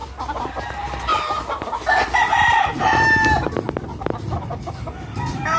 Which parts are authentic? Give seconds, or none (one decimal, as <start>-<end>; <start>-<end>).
0.0-5.6